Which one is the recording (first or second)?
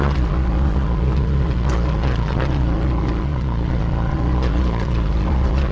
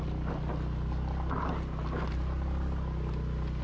second